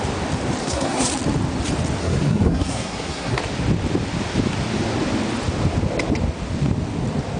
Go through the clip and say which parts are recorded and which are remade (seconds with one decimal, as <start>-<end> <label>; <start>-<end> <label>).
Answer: 0.0-0.6 recorded; 0.6-1.1 remade; 1.1-2.0 recorded; 2.0-3.4 remade; 3.4-7.4 recorded